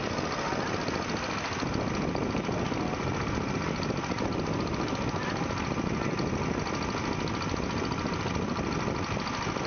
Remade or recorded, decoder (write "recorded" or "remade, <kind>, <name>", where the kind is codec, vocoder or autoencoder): recorded